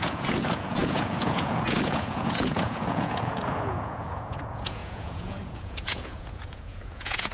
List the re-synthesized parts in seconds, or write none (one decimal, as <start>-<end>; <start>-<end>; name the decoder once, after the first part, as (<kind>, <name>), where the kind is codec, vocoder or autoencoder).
0.0-7.3 (vocoder, Vocos)